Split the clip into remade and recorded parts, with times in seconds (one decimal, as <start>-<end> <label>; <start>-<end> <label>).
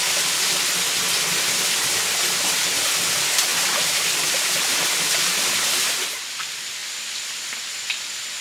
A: 0.0-3.5 recorded; 3.5-4.9 remade; 4.9-6.8 recorded; 6.8-7.7 remade; 7.7-8.4 recorded